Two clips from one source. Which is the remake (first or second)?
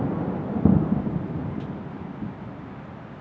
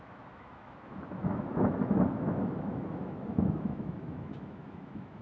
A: second